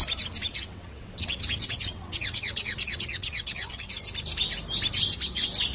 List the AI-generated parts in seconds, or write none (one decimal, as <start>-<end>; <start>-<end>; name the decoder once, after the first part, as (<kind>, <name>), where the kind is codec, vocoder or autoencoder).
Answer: 0.5-3.9 (vocoder, WaveNeXt)